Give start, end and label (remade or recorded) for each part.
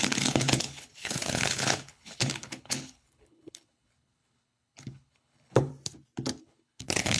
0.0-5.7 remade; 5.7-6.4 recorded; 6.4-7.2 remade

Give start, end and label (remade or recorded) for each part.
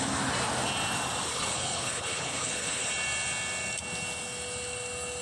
0.0-1.3 recorded; 1.3-2.9 remade; 2.9-5.2 recorded